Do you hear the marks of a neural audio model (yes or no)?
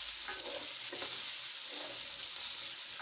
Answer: no